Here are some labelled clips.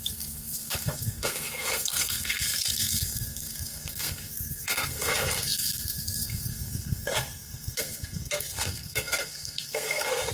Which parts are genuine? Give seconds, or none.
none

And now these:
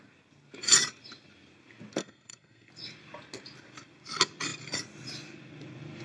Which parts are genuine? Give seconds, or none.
0.0-2.0; 2.7-6.0